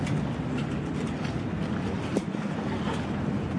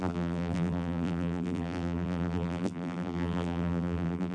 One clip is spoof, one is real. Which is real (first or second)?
first